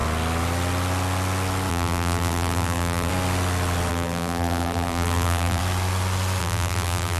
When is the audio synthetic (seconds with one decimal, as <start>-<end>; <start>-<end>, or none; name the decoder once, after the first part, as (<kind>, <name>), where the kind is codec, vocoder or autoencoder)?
1.7-3.1 (vocoder, BigVGAN v2); 3.9-5.6; 6.4-7.2